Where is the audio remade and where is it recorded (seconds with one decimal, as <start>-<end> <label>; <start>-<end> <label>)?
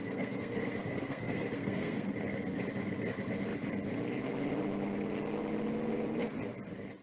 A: 0.0-2.1 remade; 2.1-7.0 recorded